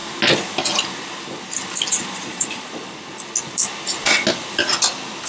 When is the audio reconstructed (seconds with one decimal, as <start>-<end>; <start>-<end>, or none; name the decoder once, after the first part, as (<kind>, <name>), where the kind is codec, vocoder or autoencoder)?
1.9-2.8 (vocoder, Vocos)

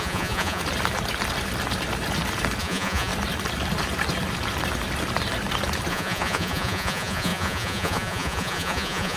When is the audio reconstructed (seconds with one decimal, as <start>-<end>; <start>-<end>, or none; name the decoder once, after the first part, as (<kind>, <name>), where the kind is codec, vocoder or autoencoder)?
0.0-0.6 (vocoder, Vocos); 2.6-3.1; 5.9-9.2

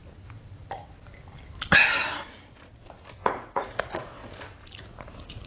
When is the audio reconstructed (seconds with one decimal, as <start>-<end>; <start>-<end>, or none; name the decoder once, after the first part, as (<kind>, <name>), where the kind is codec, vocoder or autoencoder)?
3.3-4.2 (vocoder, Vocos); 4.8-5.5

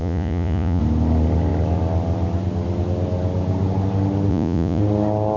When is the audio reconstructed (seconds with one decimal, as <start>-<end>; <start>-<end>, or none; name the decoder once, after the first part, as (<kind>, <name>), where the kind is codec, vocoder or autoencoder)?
0.0-0.8 (vocoder, Vocos); 4.3-4.8

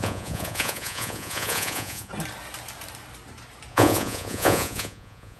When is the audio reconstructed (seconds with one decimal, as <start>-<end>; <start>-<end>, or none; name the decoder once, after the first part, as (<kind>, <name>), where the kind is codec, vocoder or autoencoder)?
0.0-2.1 (vocoder, Vocos); 3.7-5.4

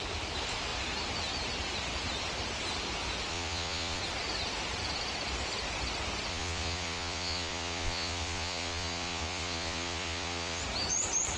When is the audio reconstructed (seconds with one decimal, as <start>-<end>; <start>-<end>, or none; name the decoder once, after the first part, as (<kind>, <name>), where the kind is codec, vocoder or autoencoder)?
3.3-4.0 (vocoder, Vocos); 6.3-10.6